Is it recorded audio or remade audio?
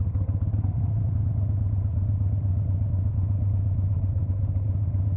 recorded